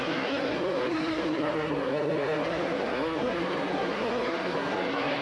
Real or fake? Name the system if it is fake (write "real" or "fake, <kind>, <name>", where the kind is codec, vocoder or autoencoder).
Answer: fake, codec, SNAC